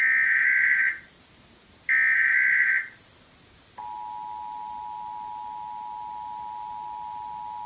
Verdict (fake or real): real